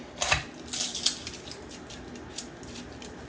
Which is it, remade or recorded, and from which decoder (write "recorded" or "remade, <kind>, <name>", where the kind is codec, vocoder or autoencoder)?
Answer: recorded